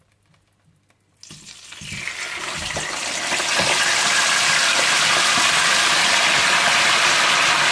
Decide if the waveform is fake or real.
real